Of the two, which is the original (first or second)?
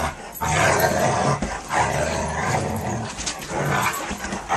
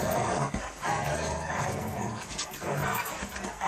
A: first